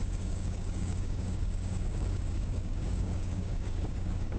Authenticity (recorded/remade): remade